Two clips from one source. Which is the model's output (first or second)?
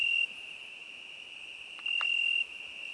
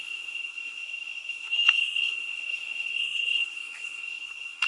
second